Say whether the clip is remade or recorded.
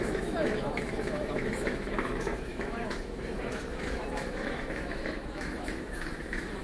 remade